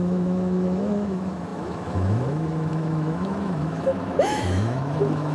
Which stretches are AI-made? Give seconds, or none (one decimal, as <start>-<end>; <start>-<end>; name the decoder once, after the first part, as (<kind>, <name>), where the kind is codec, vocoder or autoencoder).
0.0-5.3 (autoencoder, DAC-VAE)